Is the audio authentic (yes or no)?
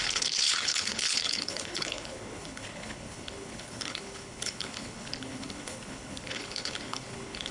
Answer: no